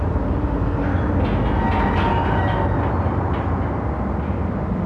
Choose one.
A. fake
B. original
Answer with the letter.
B